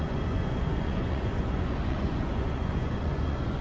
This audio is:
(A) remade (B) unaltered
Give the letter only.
A